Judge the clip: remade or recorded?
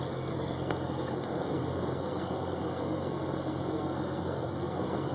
remade